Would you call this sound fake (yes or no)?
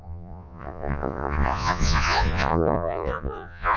yes